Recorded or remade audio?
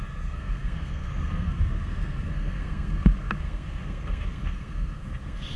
remade